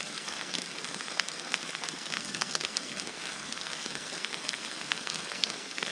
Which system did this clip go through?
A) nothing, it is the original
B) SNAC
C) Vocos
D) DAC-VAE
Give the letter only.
B